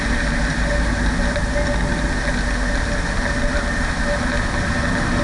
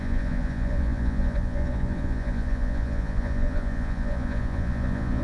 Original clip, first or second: first